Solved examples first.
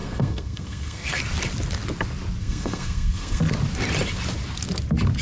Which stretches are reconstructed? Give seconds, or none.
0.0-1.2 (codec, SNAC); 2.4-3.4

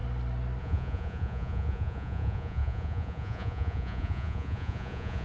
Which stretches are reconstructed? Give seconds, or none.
0.6-5.2 (vocoder, Vocos)